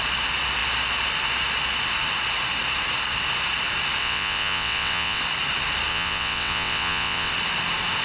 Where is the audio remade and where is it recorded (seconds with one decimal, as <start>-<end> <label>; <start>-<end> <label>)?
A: 0.0-4.0 recorded; 4.0-5.2 remade; 5.2-5.9 recorded; 5.9-7.3 remade; 7.3-8.0 recorded